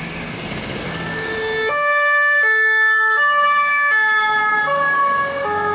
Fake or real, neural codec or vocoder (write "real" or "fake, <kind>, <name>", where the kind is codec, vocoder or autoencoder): fake, codec, DAC